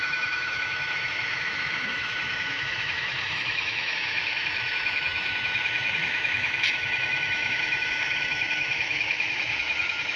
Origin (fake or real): fake